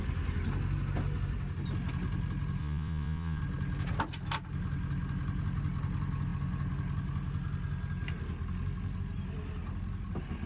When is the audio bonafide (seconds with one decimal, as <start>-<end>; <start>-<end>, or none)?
0.0-2.6; 3.4-10.5